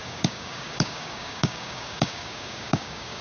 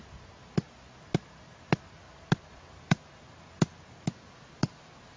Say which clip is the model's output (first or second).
first